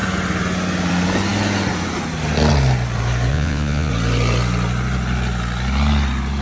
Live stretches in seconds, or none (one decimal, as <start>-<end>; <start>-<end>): 0.0-3.3; 3.9-6.4

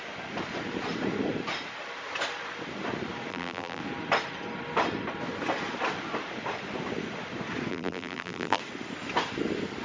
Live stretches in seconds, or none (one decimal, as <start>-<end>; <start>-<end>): 0.0-3.3; 3.8-7.7; 8.6-9.8

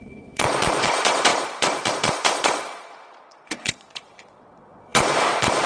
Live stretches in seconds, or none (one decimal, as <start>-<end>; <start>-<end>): none

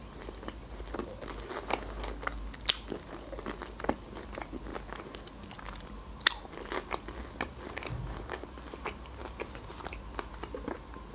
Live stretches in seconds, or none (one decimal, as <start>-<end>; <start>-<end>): 0.0-11.1

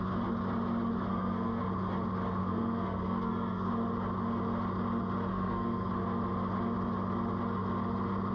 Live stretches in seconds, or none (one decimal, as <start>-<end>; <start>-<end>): 0.0-1.1; 1.6-2.4; 3.7-5.3; 5.9-8.3